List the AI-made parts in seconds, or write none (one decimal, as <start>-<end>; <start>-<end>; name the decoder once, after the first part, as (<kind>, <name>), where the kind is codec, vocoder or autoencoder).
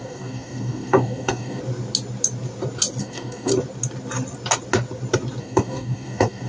0.0-1.6 (codec, DAC); 3.0-3.5; 5.4-6.5